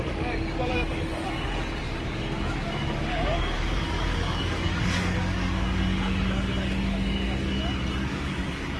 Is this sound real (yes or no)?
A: no